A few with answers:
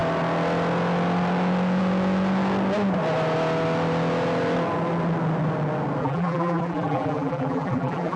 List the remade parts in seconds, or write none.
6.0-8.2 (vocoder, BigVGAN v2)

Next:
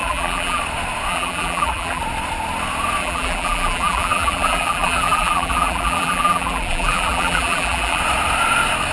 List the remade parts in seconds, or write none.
0.0-0.6 (vocoder, BigVGAN v2); 1.1-2.0; 3.0-8.0

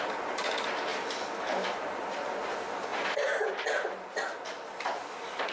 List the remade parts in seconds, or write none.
none

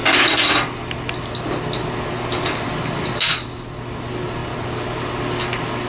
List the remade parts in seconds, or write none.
none

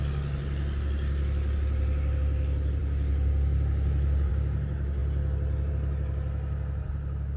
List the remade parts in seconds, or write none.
none

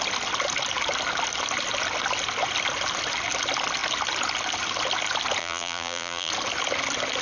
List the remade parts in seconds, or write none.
5.4-6.3 (vocoder, BigVGAN v2)

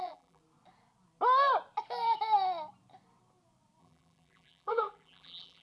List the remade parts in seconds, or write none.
0.0-0.4 (vocoder, BigVGAN v2); 3.8-5.6